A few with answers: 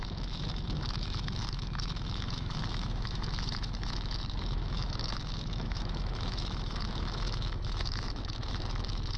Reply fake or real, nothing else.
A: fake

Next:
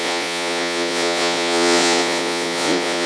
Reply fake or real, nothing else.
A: fake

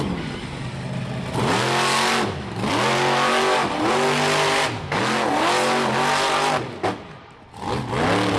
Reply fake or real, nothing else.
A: real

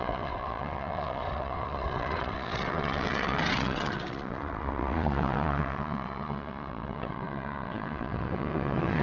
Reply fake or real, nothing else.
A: fake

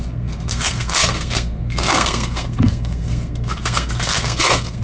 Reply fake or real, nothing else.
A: fake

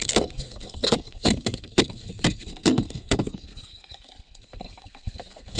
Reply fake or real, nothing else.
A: fake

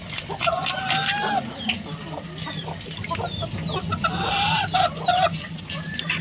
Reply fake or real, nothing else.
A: real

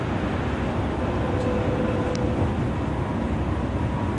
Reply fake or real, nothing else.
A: real